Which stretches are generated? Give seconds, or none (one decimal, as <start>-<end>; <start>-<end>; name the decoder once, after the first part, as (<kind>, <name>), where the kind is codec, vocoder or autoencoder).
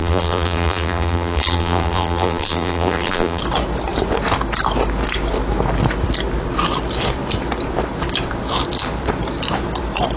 0.0-3.4 (vocoder, BigVGAN v2)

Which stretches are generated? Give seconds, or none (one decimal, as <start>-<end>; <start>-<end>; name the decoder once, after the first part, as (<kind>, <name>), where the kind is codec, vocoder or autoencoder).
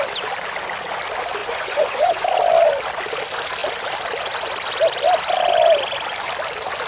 1.4-2.2 (vocoder, Vocos)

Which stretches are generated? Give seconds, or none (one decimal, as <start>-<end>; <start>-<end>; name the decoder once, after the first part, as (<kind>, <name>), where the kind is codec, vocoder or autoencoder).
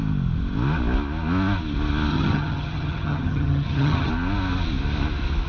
2.1-4.1 (vocoder, HiFi-GAN)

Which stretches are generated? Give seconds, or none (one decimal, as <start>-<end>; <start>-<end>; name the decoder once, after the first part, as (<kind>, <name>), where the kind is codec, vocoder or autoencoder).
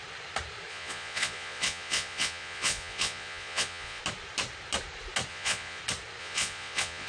0.7-4.0 (vocoder, Vocos); 5.3-5.8; 6.2-7.1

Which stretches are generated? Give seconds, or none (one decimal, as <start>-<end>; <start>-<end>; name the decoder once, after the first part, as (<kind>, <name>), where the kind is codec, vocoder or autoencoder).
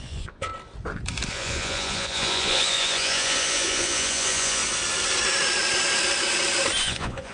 0.0-0.5 (vocoder, Vocos); 1.3-4.6; 6.8-7.3